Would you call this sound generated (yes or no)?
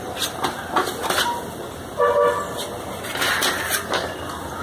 no